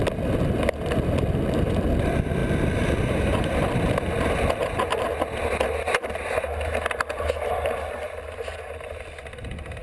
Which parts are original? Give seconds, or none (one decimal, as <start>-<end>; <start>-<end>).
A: 0.0-9.8